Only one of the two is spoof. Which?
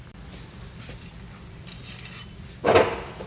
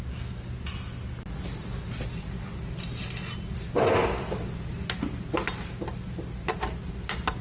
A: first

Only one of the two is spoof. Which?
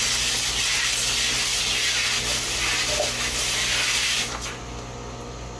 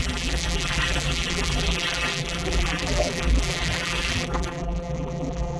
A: second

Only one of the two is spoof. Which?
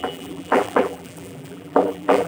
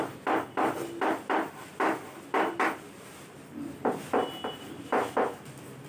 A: first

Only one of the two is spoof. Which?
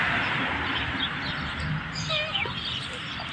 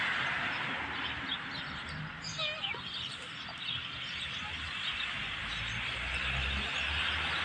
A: first